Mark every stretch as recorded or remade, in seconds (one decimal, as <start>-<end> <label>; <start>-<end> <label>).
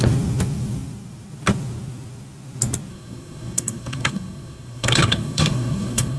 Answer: 0.0-2.9 recorded; 2.9-6.2 remade